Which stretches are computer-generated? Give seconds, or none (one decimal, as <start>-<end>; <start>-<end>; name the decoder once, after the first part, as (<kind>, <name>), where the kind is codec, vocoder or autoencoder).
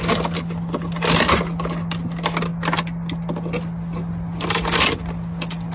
none